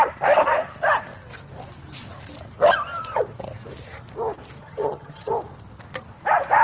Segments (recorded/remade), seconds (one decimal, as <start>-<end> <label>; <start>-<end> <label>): 0.0-4.6 recorded; 4.6-5.3 remade; 5.3-6.6 recorded